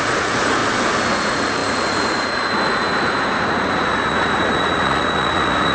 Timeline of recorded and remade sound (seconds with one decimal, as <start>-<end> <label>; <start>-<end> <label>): 0.0-0.6 remade; 0.6-1.1 recorded; 1.1-5.7 remade